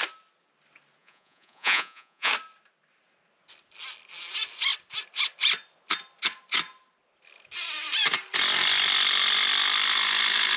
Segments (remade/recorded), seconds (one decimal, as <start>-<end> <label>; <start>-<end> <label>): 0.0-1.0 recorded; 1.0-2.3 remade; 2.3-10.6 recorded